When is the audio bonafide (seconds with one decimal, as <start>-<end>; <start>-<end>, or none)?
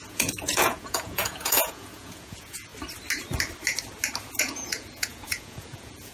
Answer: 2.7-4.4